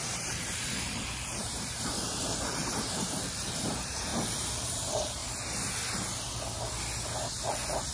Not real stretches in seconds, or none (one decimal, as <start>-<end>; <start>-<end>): 0.0-5.2; 7.3-7.9